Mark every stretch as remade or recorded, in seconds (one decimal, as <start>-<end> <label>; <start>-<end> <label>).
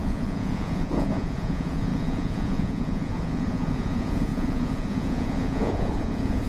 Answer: 0.0-6.5 remade